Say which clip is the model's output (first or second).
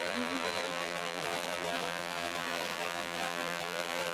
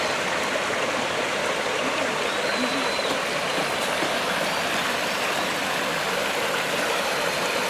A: first